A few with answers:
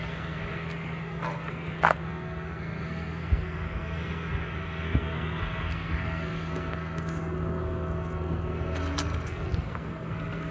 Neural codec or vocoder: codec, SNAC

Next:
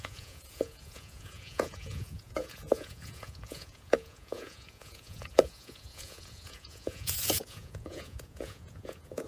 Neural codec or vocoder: vocoder, Vocos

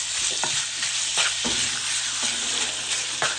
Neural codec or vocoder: none